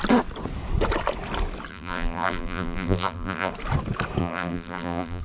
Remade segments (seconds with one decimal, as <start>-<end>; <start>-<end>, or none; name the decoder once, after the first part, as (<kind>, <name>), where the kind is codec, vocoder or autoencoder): 1.7-3.5 (vocoder, BigVGAN v2); 4.2-5.2